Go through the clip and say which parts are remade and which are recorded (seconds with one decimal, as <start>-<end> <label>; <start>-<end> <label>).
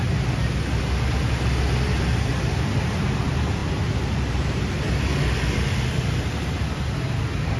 0.0-7.6 recorded